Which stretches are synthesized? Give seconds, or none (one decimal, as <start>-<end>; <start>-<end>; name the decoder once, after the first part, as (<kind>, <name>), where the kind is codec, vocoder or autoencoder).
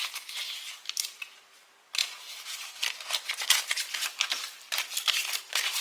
none